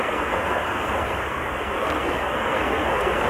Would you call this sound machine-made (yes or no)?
yes